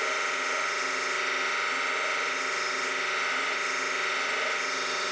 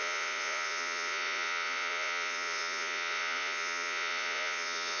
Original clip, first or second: first